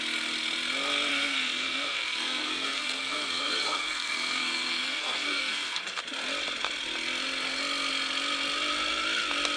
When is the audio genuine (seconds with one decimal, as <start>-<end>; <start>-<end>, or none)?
0.0-1.1; 6.0-9.6